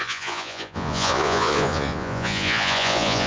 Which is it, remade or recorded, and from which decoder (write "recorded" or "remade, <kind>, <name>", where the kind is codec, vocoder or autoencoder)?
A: remade, vocoder, Vocos